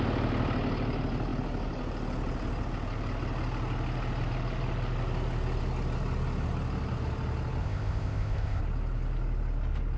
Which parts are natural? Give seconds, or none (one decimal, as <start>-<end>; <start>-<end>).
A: 0.0-7.6; 8.6-10.0